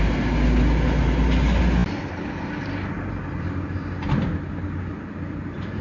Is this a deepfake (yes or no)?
no